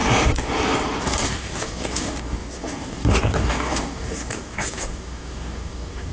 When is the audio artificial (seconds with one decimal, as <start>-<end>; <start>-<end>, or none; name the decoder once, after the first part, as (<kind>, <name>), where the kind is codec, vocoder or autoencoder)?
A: 1.0-6.1 (codec, DAC)